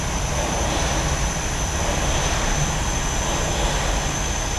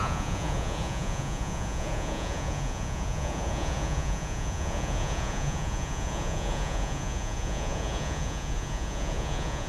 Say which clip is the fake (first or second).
second